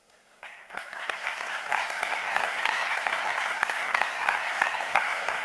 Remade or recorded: remade